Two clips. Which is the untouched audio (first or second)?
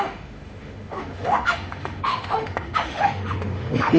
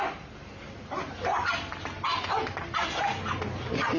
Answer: second